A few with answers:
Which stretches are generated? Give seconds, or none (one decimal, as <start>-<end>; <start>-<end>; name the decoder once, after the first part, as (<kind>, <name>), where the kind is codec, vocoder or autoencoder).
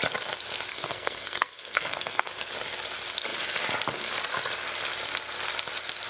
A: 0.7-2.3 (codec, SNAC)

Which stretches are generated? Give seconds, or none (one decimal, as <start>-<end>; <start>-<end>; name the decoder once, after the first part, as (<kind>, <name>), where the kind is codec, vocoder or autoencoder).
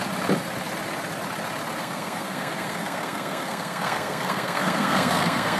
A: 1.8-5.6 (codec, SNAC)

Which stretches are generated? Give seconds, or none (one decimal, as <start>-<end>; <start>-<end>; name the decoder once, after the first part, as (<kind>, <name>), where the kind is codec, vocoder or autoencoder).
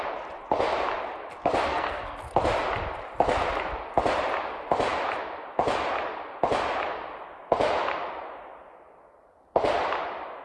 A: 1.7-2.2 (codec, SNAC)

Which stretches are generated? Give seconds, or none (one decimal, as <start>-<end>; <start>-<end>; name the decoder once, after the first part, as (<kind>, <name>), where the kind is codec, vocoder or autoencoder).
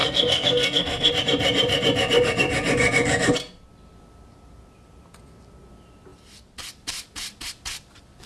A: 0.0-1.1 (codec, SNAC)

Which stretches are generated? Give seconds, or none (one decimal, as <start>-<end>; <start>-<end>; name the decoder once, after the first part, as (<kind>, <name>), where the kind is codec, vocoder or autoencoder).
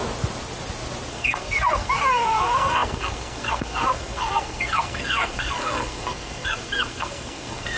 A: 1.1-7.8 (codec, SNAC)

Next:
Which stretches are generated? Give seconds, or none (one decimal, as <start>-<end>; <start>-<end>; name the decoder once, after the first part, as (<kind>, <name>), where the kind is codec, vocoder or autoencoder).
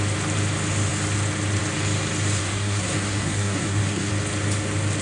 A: 2.4-4.1 (codec, SNAC)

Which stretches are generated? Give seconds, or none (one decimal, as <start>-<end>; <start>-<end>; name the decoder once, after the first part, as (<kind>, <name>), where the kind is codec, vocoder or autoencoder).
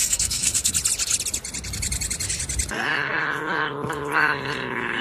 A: 0.0-0.7 (codec, SNAC)